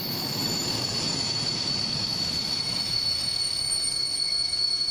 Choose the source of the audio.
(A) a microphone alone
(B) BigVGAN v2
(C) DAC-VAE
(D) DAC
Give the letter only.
C